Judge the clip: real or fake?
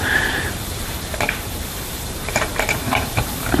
fake